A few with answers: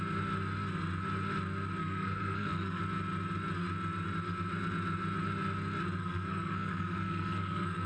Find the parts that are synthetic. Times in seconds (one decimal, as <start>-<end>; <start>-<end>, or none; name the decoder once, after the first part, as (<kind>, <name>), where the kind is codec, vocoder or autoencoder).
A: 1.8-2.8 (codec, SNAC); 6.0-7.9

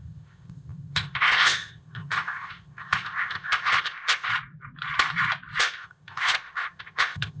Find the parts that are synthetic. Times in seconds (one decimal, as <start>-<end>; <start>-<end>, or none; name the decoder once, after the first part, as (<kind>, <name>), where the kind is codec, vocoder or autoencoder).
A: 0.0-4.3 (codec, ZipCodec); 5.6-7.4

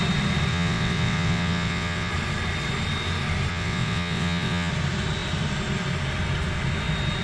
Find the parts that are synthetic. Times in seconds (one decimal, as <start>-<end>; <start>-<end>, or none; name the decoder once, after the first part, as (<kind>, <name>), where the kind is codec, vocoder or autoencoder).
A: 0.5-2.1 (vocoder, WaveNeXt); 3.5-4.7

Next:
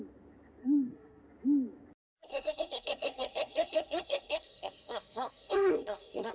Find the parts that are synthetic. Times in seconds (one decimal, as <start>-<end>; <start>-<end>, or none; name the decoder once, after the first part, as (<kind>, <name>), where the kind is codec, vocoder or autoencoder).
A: 0.6-1.2 (codec, SNAC); 2.3-6.3